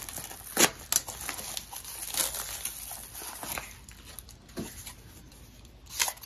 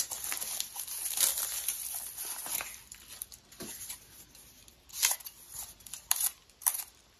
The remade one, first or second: second